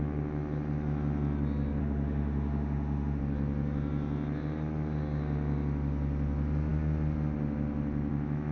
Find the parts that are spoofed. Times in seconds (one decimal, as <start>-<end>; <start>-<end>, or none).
1.8-3.2